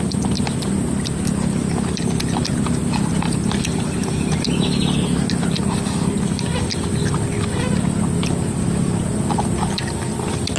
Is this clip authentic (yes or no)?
yes